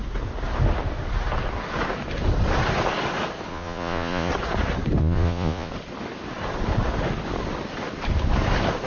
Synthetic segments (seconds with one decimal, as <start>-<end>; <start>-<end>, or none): 3.5-4.3; 5.0-5.7